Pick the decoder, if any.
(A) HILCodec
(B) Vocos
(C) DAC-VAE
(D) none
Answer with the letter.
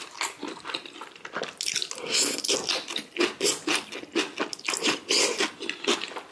D